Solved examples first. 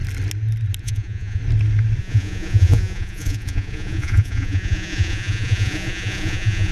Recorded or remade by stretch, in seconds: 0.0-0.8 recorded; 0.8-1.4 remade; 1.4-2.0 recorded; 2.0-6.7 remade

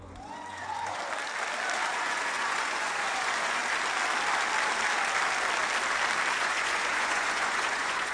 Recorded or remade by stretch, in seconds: 0.0-1.0 remade; 1.0-1.9 recorded; 1.9-3.6 remade; 3.6-6.3 recorded; 6.3-8.1 remade